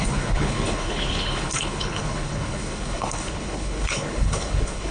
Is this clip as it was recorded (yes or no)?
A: no